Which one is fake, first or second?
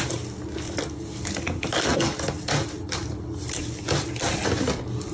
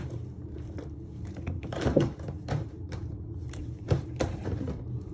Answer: second